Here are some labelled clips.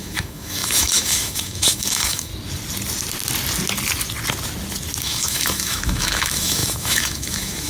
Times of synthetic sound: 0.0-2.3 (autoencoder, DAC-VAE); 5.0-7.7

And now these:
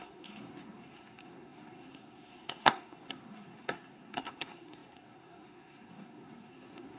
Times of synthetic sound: 0.0-7.0 (codec, SNAC)